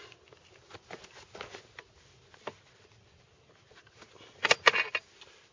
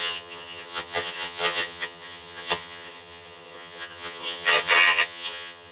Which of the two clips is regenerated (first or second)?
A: second